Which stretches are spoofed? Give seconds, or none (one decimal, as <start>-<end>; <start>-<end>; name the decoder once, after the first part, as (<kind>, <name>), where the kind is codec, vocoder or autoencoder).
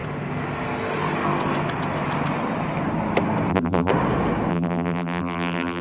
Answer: 3.5-3.9 (vocoder, BigVGAN v2); 4.5-5.8